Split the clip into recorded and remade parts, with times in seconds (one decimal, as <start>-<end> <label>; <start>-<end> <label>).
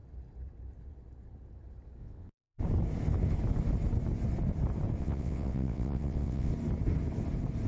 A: 0.0-2.0 recorded; 2.0-2.6 remade; 2.6-5.0 recorded; 5.0-6.5 remade; 6.5-7.7 recorded